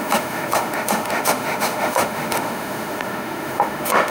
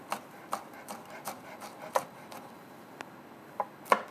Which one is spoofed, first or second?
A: first